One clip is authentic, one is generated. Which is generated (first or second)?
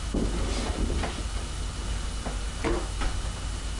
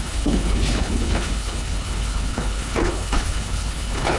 second